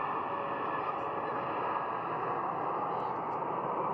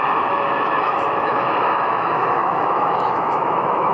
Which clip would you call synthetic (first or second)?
second